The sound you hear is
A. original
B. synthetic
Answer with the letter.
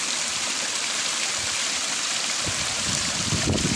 B